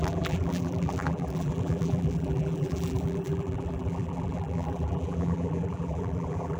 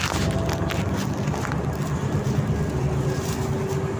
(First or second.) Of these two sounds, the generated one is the first